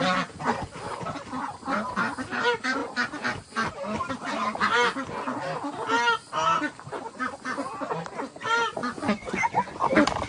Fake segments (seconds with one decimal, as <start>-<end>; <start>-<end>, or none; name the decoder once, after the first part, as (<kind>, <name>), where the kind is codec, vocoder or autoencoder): 8.8-9.8 (vocoder, Vocos)